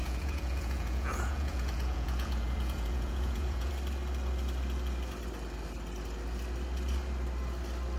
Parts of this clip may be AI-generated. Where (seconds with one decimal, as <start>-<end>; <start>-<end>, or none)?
0.0-3.7